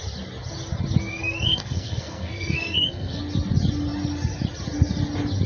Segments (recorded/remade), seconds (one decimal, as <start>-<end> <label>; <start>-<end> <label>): 0.0-1.1 recorded; 1.1-3.2 remade; 3.2-5.5 recorded

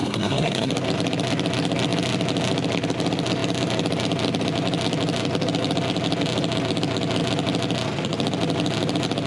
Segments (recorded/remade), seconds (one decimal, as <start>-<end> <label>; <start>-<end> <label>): 0.0-0.7 remade; 0.7-9.3 recorded